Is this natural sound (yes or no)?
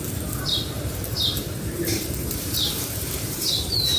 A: no